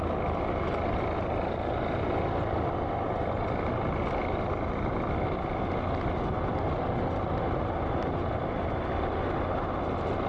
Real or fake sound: real